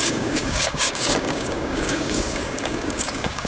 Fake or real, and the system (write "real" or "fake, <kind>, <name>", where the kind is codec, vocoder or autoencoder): fake, codec, DAC